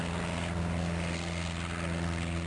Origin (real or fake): real